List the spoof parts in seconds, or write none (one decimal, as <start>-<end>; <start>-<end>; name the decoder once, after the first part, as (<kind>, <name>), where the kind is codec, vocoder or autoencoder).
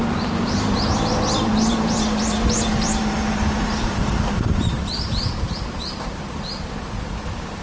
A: 0.0-7.6 (vocoder, BigVGAN v2)